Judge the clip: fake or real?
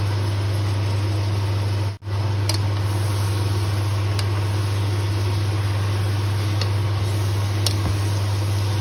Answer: real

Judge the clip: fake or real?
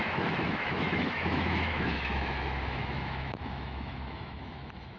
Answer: fake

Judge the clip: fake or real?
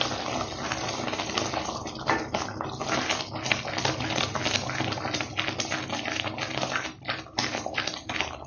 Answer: real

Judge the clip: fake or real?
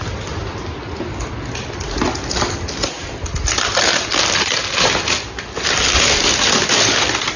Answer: real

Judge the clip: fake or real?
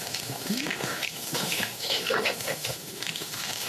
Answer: fake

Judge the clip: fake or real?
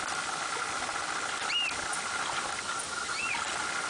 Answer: real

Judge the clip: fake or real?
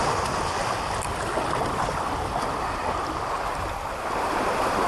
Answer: real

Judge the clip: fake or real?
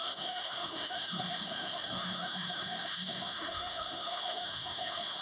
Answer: fake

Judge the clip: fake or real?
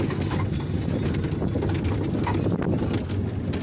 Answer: real